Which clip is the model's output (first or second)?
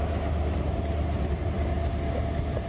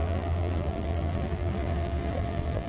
second